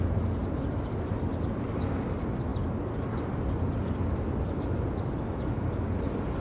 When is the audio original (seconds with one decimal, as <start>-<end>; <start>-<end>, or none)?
0.0-6.4